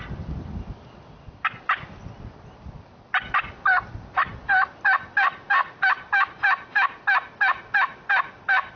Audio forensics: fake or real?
real